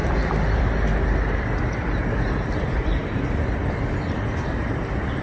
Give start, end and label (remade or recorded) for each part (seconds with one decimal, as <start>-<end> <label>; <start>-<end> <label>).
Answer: 0.0-5.2 remade